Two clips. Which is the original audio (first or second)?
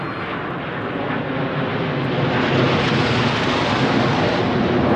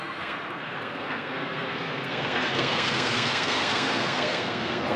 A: first